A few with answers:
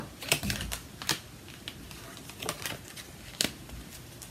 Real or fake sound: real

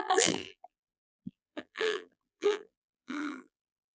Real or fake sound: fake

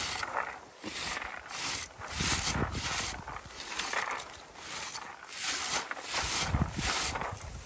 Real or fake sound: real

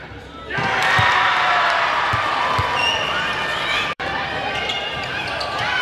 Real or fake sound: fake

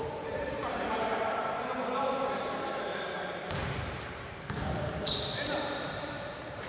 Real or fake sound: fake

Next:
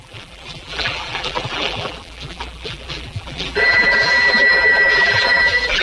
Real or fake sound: fake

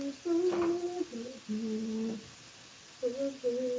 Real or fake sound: real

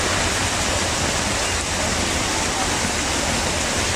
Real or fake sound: real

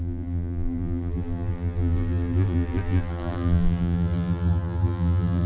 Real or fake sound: fake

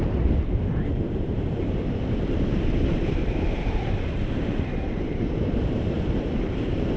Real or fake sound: fake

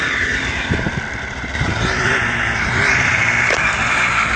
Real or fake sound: fake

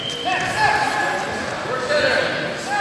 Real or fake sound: real